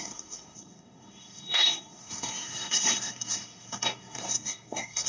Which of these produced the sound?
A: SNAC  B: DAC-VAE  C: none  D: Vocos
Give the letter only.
A